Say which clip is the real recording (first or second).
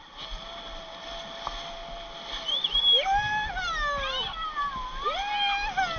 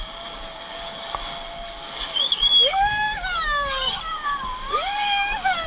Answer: first